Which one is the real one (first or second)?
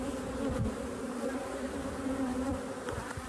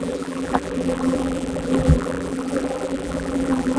first